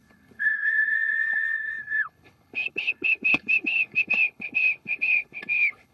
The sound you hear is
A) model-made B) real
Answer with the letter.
A